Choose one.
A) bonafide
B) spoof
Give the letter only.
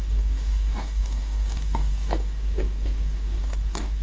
B